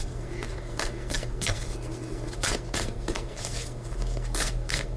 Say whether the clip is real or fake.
fake